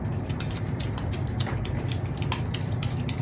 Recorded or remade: remade